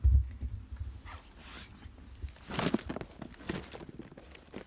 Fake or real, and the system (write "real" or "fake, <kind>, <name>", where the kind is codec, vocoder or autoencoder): real